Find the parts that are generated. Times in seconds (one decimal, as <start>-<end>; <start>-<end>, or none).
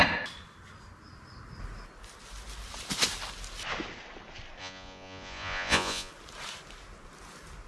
4.6-6.1